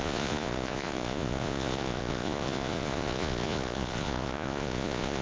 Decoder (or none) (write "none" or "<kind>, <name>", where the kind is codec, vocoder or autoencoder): vocoder, Vocos